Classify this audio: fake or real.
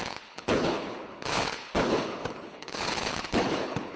fake